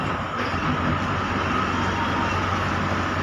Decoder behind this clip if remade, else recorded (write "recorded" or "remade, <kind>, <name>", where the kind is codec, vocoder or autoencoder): recorded